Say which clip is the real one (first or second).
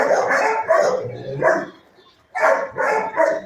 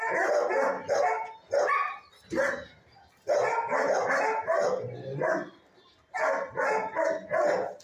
second